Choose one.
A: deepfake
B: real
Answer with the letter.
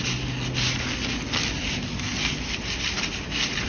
B